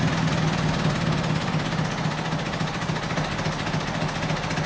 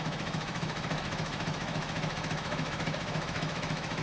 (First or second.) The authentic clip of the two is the first